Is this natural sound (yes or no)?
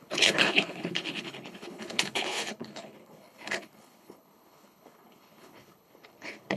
no